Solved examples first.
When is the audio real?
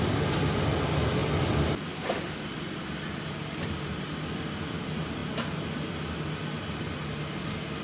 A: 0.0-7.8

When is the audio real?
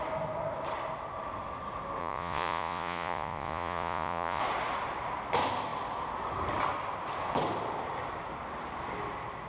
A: 0.0-2.0; 4.4-9.5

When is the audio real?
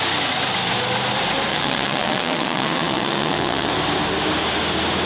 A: 0.0-1.5; 3.7-5.1